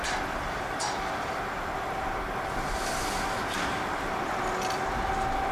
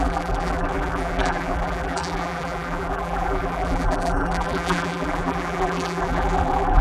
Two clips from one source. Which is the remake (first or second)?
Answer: second